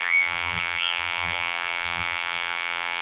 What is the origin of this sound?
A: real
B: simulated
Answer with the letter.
B